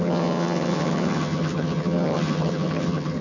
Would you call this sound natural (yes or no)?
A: no